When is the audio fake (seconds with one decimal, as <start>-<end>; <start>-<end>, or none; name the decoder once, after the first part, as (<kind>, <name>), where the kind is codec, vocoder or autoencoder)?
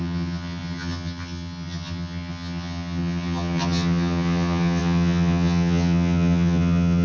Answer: 0.0-7.0 (vocoder, HiFi-GAN)